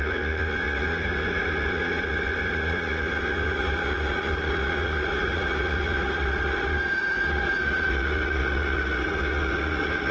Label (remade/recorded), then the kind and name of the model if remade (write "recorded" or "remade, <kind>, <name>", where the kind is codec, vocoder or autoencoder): remade, vocoder, Vocos